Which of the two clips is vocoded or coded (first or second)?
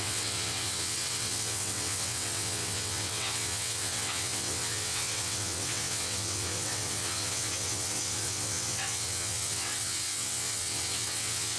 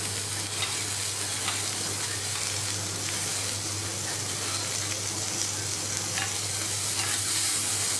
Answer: first